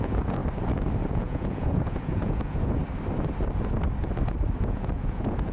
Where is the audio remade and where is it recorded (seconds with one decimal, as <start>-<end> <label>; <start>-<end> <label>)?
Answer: 0.0-0.4 remade; 0.4-1.1 recorded; 1.1-2.8 remade; 2.8-4.6 recorded; 4.6-5.5 remade